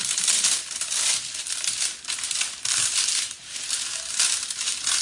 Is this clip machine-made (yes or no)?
no